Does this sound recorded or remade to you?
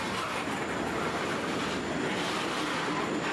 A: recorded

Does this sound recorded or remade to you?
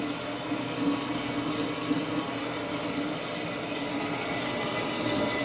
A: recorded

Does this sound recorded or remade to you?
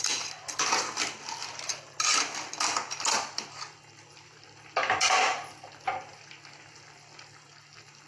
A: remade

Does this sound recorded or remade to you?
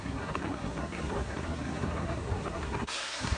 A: remade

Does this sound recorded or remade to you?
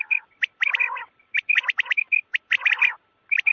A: recorded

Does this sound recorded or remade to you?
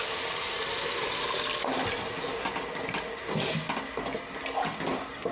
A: recorded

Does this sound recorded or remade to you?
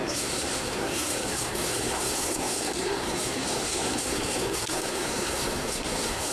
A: remade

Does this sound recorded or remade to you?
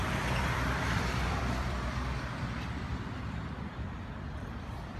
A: remade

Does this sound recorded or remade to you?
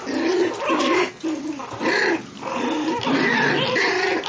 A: recorded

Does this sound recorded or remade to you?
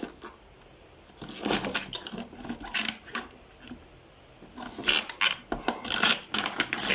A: recorded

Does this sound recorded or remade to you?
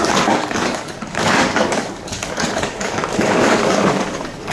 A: remade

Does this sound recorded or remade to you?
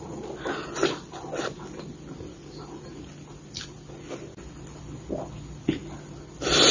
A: recorded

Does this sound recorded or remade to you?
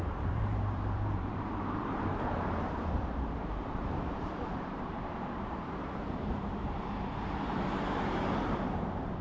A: remade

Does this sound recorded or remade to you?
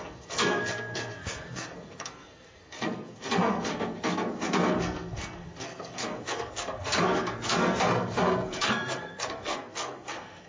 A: remade